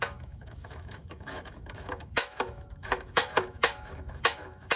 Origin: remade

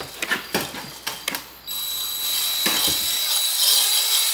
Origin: recorded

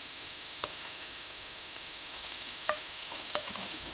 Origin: remade